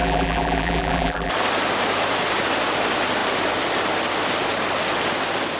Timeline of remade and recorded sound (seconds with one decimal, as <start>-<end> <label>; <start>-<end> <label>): 0.0-1.3 remade; 1.3-5.6 recorded